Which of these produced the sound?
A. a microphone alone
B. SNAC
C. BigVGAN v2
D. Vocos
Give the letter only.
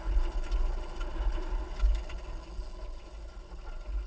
A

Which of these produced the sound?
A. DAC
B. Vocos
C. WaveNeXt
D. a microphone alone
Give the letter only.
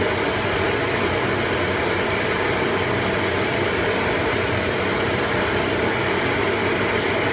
D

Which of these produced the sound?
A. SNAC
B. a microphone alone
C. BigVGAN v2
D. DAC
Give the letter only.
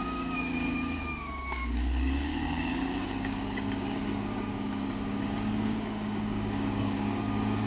D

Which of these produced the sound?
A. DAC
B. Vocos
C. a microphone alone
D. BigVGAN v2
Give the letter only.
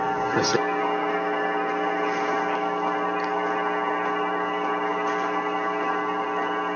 C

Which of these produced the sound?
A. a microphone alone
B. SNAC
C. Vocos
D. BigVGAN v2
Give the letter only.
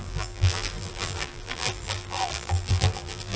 D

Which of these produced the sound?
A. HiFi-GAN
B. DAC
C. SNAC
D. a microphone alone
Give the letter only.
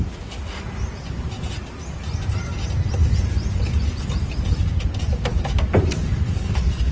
D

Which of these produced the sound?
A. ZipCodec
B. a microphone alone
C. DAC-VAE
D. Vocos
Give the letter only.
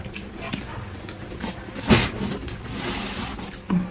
B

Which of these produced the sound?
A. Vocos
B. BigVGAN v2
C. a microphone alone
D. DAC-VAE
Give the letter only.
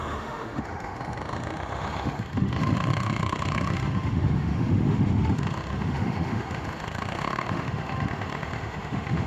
D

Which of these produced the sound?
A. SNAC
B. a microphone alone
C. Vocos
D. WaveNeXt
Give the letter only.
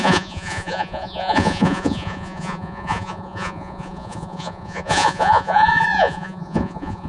C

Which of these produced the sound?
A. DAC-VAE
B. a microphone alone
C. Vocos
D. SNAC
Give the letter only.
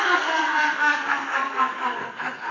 D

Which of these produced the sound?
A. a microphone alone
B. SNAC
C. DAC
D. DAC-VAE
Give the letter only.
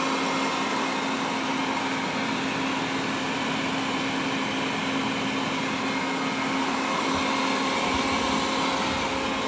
A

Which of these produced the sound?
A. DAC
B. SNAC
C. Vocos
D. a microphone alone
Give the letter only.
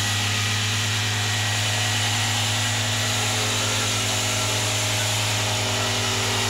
D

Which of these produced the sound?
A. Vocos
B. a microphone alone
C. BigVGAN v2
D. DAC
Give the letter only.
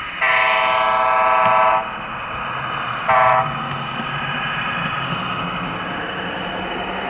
B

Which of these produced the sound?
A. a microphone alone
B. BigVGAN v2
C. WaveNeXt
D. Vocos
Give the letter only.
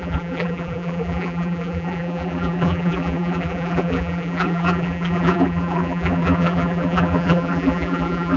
B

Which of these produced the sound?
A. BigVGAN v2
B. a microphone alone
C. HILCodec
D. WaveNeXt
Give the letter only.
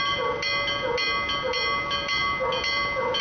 B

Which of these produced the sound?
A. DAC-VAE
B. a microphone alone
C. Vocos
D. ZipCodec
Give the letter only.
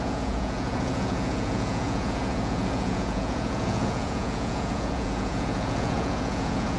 C